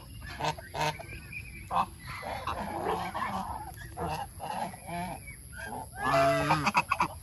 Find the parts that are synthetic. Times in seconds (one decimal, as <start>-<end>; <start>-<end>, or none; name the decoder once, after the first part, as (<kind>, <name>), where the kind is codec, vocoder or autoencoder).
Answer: 1.1-3.8 (vocoder, BigVGAN v2)